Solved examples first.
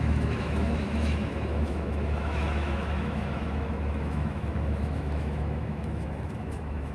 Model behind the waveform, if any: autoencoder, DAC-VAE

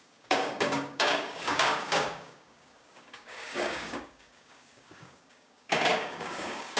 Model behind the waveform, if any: codec, DAC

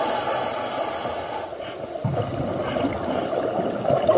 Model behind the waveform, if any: none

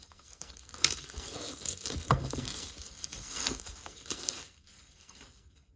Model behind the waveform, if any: codec, SNAC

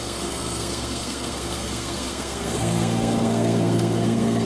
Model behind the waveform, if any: codec, SNAC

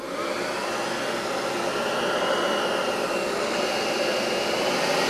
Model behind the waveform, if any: none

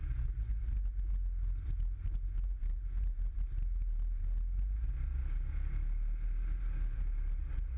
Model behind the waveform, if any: none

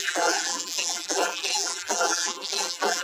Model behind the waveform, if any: vocoder, BigVGAN v2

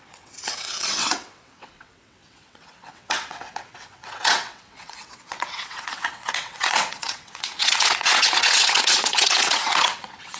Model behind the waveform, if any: vocoder, WaveNeXt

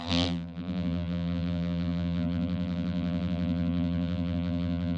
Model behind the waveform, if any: vocoder, BigVGAN v2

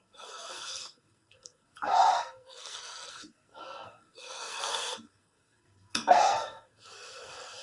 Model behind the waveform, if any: codec, SNAC